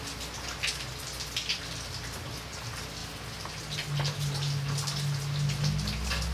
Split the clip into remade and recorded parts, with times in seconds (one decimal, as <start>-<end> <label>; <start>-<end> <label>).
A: 0.0-6.3 recorded